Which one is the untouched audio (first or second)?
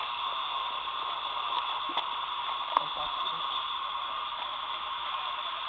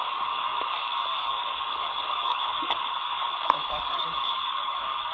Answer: first